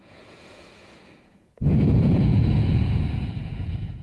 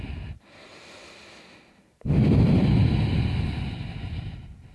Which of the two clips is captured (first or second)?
second